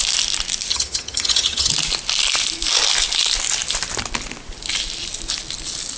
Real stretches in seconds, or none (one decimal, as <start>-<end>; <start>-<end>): 0.0-0.7; 1.7-6.0